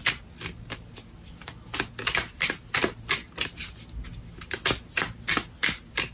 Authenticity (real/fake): real